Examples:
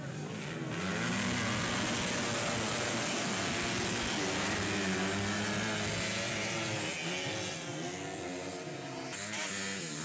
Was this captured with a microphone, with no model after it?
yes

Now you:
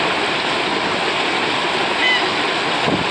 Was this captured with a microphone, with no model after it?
yes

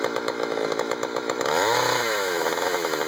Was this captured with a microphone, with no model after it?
no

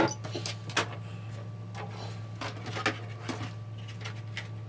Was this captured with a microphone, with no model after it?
yes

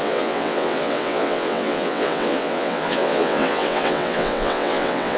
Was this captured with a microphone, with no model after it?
no